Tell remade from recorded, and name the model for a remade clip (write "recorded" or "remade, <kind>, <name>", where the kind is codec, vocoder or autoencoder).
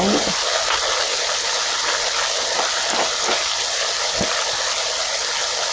recorded